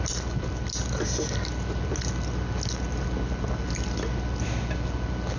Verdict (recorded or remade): recorded